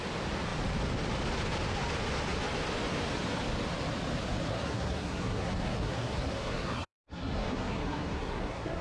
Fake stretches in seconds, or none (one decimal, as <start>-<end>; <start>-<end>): 4.5-8.8